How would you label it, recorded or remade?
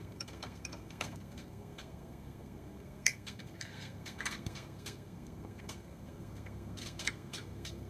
remade